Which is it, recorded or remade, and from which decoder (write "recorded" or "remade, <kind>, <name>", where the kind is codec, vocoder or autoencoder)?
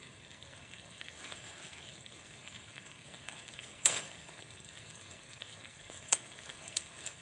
remade, codec, SNAC